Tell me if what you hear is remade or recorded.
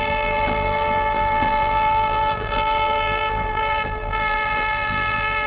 remade